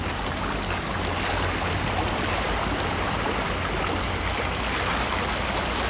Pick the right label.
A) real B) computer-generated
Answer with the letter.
A